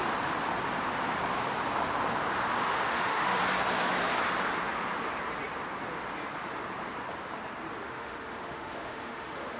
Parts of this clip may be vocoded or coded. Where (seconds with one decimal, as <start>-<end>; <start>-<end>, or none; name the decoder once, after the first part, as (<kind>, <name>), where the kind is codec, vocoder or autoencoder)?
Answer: 2.6-3.4 (autoencoder, DAC-VAE); 7.8-9.6